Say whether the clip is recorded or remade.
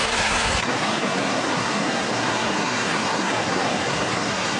remade